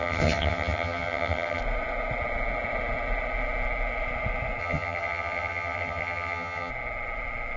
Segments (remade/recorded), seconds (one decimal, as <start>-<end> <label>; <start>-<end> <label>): 0.0-1.6 remade; 1.6-4.6 recorded; 4.6-6.7 remade; 6.7-7.6 recorded